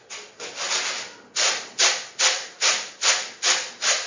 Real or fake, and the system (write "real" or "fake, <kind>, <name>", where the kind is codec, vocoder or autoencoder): real